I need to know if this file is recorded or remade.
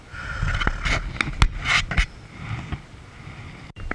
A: recorded